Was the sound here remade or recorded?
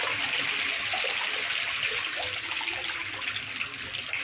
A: recorded